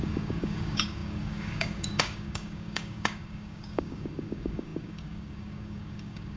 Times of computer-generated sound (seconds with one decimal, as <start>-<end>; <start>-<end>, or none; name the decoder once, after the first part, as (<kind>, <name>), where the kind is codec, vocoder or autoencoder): 0.0-6.4 (codec, DAC)